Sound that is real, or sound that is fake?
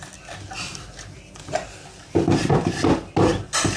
real